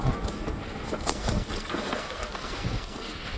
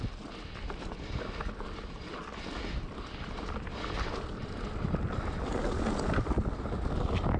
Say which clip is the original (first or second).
second